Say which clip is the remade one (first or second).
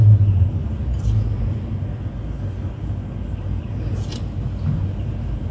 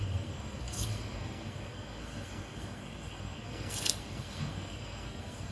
second